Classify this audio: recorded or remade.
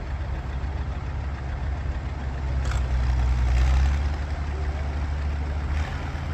recorded